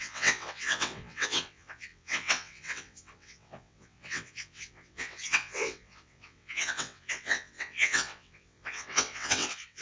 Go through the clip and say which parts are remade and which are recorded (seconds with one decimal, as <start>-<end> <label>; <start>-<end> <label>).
0.0-9.8 remade